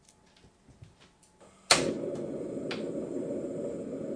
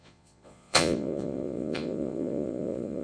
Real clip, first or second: first